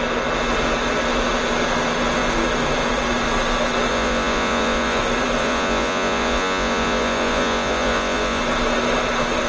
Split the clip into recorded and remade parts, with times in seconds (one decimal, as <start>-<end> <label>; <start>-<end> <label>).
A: 0.0-3.9 recorded; 3.9-5.0 remade; 5.0-5.4 recorded; 5.4-8.4 remade; 8.4-9.5 recorded